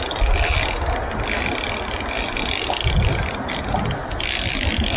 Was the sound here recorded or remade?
recorded